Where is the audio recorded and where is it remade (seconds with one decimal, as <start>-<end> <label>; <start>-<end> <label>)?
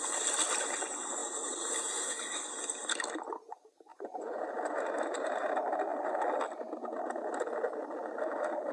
0.0-1.2 recorded; 1.2-1.8 remade; 1.8-3.9 recorded; 3.9-5.5 remade; 5.5-8.7 recorded